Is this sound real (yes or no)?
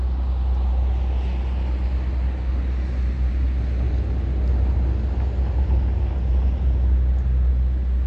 yes